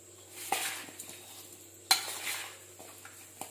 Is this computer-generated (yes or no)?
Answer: no